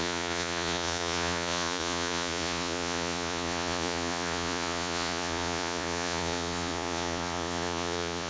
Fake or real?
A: fake